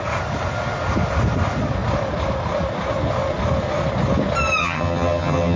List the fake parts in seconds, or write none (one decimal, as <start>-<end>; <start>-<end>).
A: 4.6-5.6